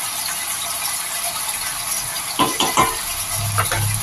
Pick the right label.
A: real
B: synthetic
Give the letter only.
A